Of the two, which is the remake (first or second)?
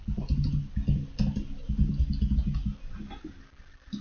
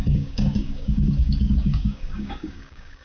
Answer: second